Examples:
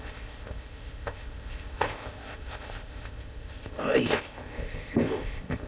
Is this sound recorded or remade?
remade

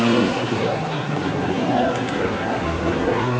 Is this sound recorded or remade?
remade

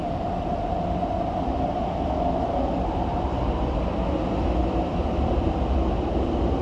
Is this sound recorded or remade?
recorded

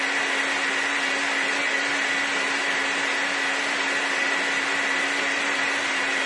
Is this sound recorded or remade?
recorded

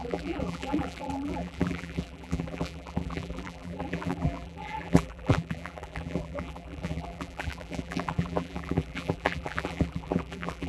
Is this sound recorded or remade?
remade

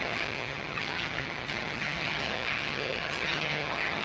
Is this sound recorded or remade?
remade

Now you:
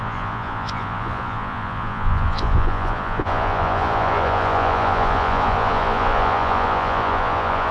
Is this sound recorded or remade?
remade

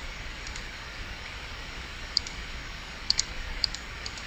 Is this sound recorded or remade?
remade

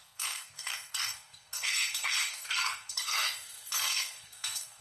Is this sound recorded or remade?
remade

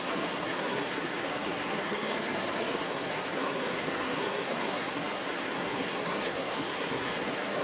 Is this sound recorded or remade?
remade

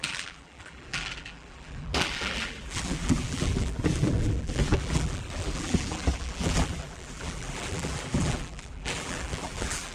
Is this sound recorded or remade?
remade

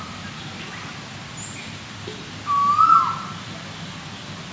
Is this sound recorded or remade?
recorded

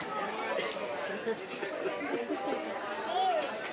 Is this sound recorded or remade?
recorded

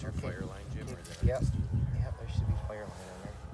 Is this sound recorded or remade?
recorded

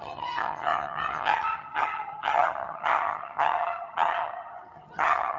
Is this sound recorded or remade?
remade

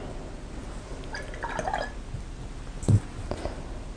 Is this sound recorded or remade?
recorded